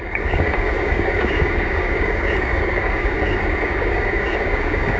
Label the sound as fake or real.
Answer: fake